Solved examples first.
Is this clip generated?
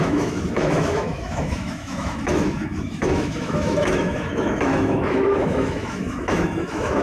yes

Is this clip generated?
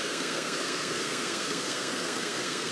yes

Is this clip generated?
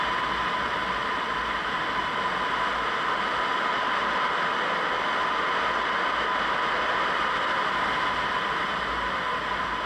no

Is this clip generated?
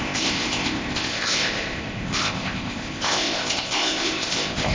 yes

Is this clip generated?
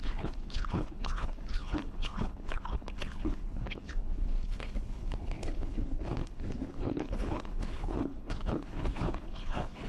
yes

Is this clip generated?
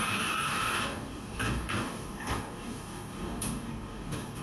yes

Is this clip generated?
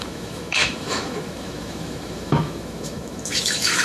yes